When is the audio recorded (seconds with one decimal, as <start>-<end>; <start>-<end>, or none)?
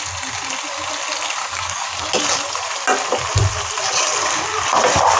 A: 0.0-1.4; 2.1-5.2